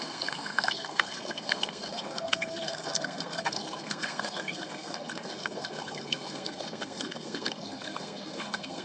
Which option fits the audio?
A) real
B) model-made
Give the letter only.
B